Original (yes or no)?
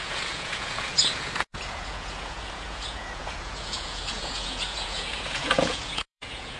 no